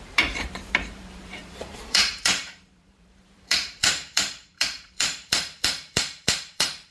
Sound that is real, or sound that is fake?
fake